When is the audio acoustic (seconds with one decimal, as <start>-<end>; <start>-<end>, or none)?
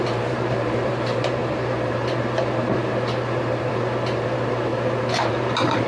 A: 4.7-5.3